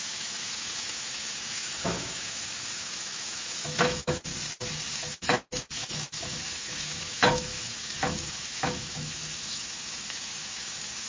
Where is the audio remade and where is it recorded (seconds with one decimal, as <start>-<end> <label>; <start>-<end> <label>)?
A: 0.0-4.3 remade; 4.3-4.9 recorded; 4.9-11.1 remade